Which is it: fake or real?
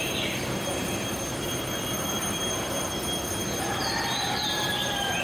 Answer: real